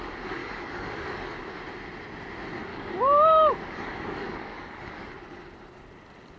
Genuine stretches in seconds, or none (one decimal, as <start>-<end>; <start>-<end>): 0.0-0.4; 1.4-2.7; 5.1-6.4